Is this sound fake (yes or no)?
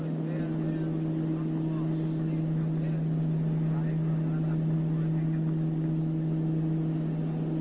no